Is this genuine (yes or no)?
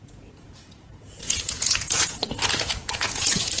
no